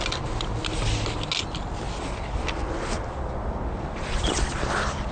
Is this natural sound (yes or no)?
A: yes